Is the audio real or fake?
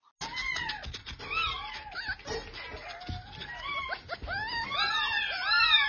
real